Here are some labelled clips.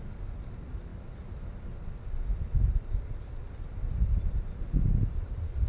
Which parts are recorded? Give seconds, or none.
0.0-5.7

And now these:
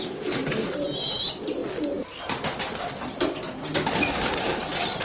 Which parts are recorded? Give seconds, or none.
0.0-5.0